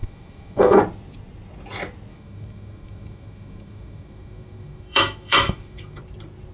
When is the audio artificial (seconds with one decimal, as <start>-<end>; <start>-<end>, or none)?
0.0-0.8; 2.1-6.0